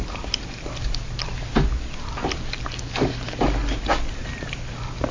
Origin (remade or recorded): recorded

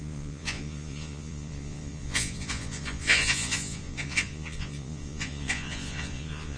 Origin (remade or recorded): remade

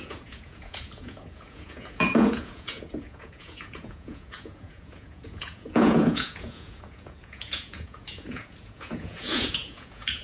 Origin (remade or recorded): remade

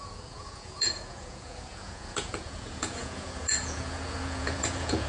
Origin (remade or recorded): remade